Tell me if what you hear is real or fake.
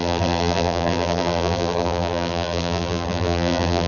fake